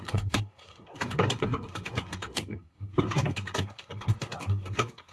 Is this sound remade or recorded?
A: remade